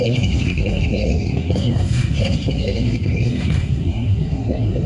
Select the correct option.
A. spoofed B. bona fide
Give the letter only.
A